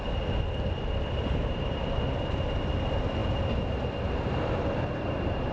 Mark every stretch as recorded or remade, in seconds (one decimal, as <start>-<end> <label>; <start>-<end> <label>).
0.0-5.5 recorded